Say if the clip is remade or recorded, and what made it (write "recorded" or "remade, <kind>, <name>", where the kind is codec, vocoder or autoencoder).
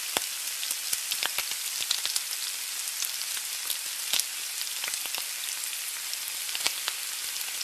recorded